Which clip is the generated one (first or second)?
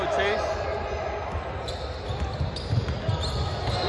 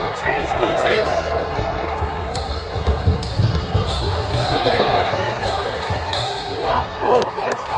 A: second